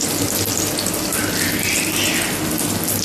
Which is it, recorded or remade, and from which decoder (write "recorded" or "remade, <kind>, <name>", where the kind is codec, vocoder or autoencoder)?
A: recorded